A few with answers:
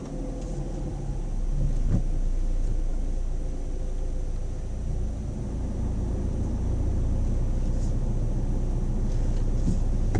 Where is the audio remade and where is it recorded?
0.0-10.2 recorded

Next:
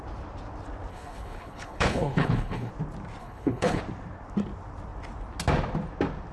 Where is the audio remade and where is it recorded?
0.0-0.9 recorded; 0.9-2.7 remade; 2.7-3.2 recorded; 3.2-3.8 remade; 3.8-6.3 recorded